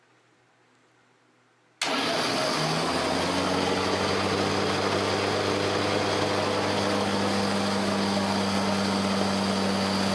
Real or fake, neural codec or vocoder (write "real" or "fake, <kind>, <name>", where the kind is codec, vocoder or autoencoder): real